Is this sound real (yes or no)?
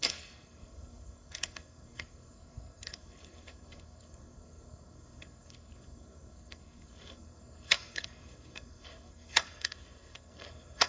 no